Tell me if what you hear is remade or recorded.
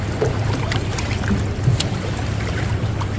recorded